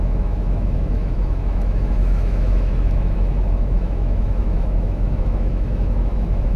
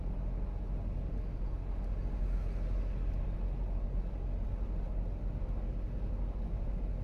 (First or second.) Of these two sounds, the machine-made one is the first